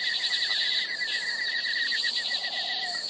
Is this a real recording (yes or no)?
no